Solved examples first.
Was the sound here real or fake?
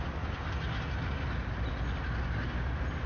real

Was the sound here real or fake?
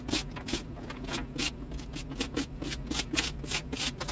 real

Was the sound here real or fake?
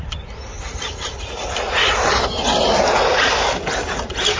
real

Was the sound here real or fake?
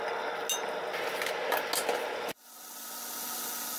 real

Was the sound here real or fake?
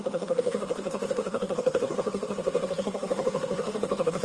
fake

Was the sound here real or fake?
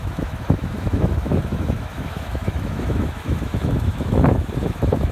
fake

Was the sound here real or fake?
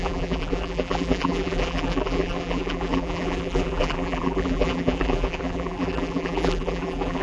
fake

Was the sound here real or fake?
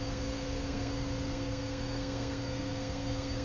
fake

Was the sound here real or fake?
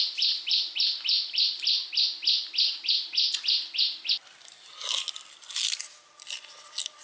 real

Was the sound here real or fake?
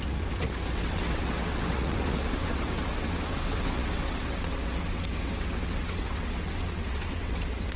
fake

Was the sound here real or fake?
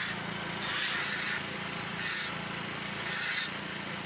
real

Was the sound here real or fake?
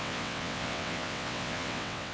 fake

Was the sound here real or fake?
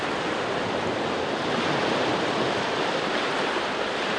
fake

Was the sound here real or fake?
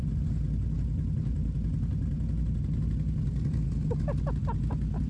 real